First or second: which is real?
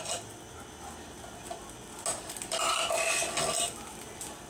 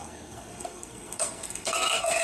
first